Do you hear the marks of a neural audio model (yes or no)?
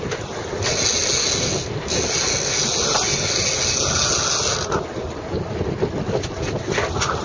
no